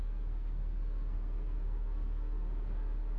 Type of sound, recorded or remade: remade